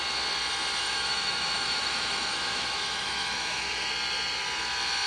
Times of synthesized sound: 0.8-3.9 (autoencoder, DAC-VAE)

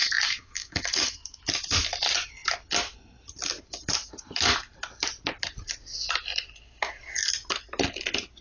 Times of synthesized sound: 0.0-1.4 (autoencoder, DAC-VAE)

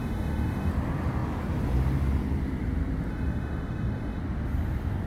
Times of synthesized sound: 0.0-0.7 (autoencoder, DAC-VAE); 3.1-4.2

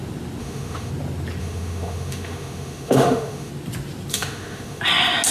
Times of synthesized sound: 0.4-0.9 (autoencoder, DAC-VAE); 1.4-3.5; 4.1-4.8

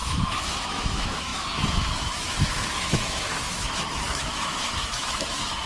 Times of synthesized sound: 0.0-5.7 (autoencoder, DAC-VAE)